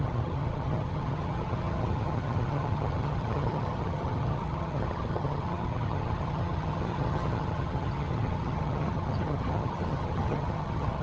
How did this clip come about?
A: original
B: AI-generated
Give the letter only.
B